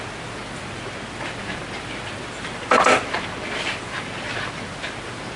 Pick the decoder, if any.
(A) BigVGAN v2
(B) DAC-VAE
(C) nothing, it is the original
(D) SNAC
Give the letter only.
C